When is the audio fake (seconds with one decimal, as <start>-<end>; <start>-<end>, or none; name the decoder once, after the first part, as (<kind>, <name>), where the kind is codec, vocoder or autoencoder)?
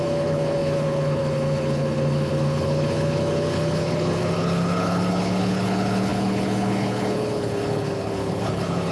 0.0-8.9 (codec, HILCodec)